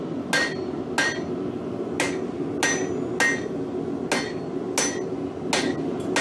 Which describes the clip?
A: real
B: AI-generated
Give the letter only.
A